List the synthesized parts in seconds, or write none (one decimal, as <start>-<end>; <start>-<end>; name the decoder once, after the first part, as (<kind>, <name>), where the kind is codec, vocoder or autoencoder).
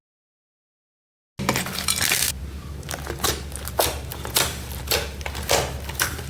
4.1-4.8 (vocoder, BigVGAN v2)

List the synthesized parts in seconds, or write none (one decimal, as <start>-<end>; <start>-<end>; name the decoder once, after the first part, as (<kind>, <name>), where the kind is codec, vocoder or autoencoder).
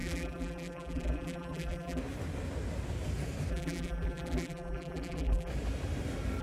0.0-2.0 (vocoder, BigVGAN v2); 3.5-5.5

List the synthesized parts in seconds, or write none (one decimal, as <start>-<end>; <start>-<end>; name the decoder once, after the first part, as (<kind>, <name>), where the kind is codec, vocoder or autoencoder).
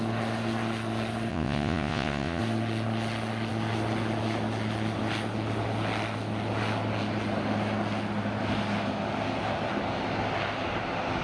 1.3-2.4 (vocoder, Vocos)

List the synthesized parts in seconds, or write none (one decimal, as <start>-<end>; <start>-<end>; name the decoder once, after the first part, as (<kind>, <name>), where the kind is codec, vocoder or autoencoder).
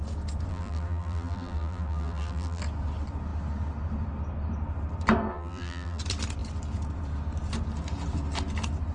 0.5-2.6 (vocoder, BigVGAN v2); 5.3-6.0